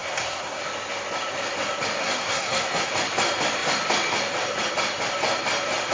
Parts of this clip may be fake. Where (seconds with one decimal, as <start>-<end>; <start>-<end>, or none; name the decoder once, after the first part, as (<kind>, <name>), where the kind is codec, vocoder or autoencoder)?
0.0-0.6 (codec, SNAC); 2.0-2.9